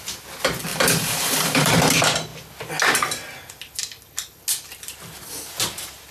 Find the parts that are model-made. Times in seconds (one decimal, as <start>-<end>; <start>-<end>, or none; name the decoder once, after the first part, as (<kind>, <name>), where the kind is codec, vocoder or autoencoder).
0.7-1.7 (vocoder, BigVGAN v2)